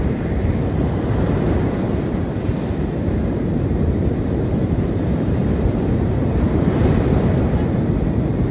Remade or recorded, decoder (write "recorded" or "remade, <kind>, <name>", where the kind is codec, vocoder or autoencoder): remade, vocoder, BigVGAN v2